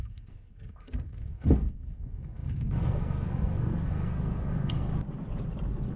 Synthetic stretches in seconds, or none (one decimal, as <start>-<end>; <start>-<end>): 0.0-4.9